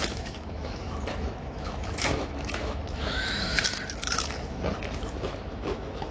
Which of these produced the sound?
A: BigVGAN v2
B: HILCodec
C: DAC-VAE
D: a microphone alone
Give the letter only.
C